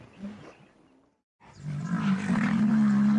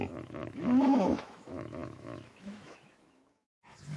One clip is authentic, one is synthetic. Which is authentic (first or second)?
first